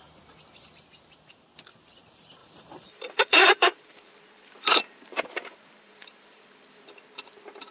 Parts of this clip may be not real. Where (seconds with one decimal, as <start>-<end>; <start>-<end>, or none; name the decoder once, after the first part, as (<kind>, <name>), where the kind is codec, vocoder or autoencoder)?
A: 2.4-7.0 (vocoder, BigVGAN v2)